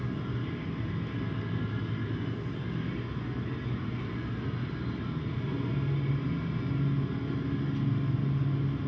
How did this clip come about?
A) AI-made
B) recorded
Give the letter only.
B